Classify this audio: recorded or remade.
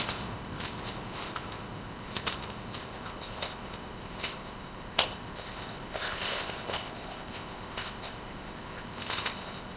remade